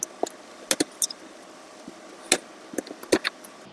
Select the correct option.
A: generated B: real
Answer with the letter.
B